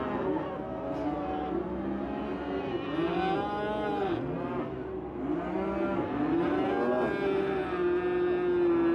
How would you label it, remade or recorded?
recorded